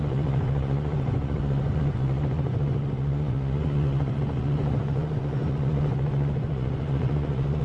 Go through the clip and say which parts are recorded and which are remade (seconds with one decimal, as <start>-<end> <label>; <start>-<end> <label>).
0.0-7.6 remade